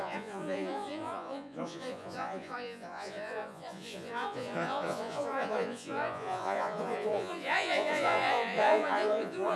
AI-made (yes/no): yes